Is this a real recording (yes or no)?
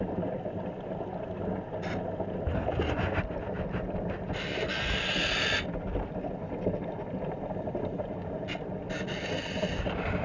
yes